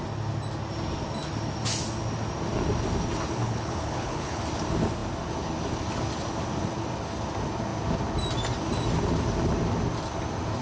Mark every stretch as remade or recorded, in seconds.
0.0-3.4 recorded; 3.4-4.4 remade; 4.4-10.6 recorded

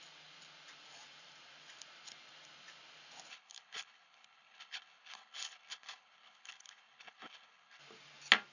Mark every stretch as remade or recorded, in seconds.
0.0-3.3 recorded; 3.3-7.8 remade; 7.8-8.5 recorded

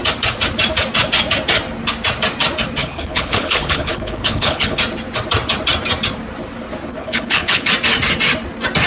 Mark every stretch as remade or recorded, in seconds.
0.0-2.8 recorded; 2.8-4.8 remade; 4.8-6.9 recorded; 6.9-7.7 remade; 7.7-8.9 recorded

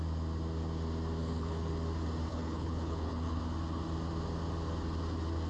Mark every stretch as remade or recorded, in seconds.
0.0-1.2 recorded; 1.2-1.7 remade; 1.7-2.3 recorded; 2.3-3.4 remade; 3.4-5.5 recorded